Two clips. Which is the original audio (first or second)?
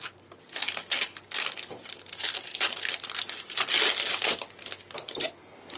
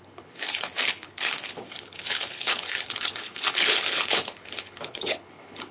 first